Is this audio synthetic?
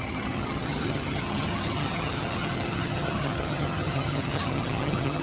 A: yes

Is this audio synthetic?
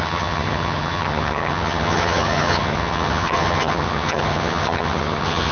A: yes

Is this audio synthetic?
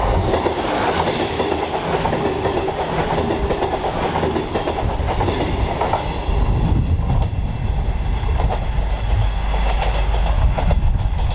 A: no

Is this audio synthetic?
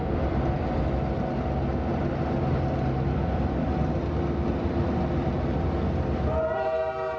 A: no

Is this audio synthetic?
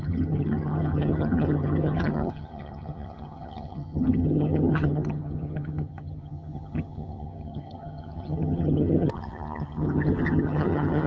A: yes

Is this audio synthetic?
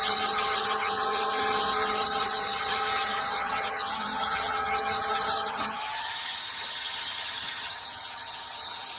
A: yes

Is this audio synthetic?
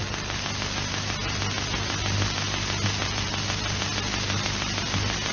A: no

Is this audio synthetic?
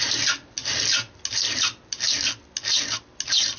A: no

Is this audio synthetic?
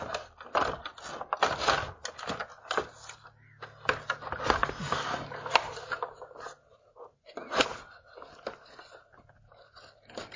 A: no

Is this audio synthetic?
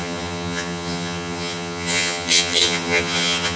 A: yes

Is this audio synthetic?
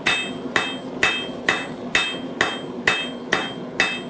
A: no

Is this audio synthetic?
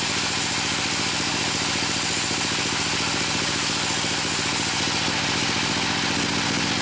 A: no